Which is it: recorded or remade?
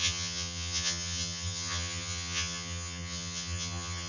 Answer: remade